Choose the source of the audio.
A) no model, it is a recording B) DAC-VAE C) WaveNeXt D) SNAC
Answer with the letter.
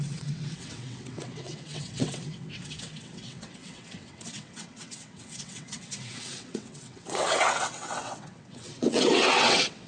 C